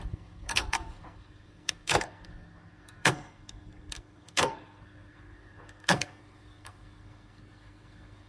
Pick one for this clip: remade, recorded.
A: remade